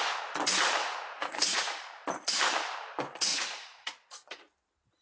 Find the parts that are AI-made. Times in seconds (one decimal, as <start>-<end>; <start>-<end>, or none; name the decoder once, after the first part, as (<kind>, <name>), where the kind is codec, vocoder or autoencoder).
0.8-1.8 (vocoder, Vocos); 3.3-4.4

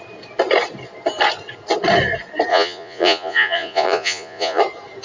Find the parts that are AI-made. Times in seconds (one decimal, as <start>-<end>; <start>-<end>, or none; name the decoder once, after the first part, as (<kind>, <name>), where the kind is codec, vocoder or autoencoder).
2.5-4.6 (vocoder, Vocos)

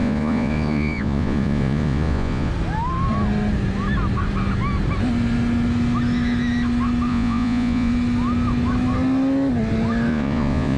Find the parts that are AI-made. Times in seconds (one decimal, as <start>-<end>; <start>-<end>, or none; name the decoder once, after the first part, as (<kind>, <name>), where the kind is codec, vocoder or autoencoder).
0.0-2.5 (vocoder, Vocos); 7.1-7.9; 10.1-10.8

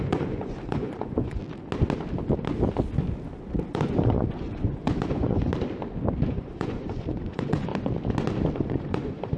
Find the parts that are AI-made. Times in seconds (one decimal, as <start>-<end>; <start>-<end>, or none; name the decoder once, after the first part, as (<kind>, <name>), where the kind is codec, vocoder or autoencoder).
0.0-1.4 (vocoder, Vocos); 3.7-5.5; 6.3-7.7; 8.6-9.4

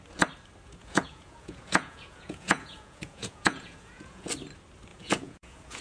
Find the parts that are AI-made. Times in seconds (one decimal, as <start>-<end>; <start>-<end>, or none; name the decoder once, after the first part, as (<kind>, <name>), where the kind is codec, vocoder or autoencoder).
0.8-4.3 (vocoder, Vocos); 4.9-5.8

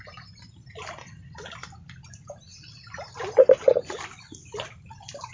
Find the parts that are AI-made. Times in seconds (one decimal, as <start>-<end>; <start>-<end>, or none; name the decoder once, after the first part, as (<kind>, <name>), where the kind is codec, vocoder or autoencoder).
none

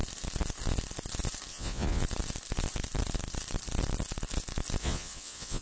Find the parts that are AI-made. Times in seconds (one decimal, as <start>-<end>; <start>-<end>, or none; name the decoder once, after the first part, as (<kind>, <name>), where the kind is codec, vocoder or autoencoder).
1.5-2.0 (vocoder, Vocos); 4.8-5.6